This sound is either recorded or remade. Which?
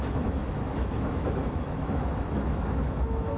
remade